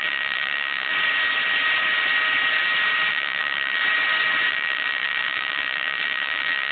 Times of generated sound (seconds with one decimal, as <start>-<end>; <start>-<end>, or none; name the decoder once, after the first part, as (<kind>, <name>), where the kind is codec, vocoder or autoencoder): 0.0-0.9 (vocoder, WaveNeXt); 3.1-3.8; 4.5-6.7